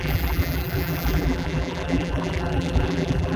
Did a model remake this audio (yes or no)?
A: yes